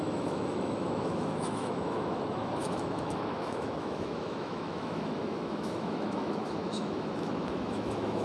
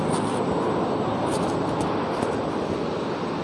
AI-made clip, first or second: first